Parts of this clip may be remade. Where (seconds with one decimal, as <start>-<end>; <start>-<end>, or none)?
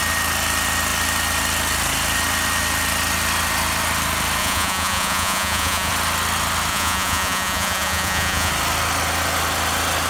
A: 4.4-5.9; 6.7-8.5